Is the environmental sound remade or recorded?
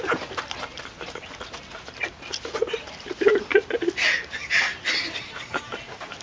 recorded